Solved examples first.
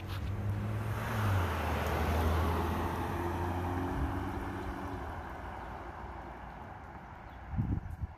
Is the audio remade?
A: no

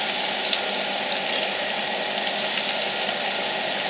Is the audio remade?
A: no